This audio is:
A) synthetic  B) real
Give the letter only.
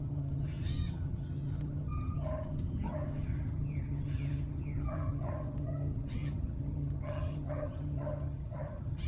A